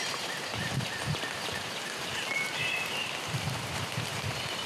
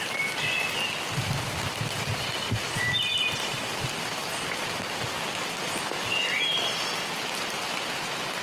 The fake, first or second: first